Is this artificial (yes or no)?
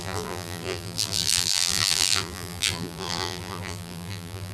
yes